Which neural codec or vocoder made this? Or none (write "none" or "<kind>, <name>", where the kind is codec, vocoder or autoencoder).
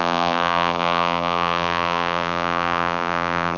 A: vocoder, BigVGAN v2